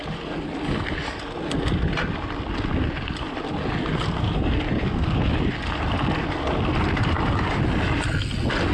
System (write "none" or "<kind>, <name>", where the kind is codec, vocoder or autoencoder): none